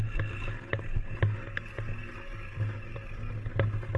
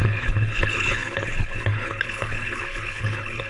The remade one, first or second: second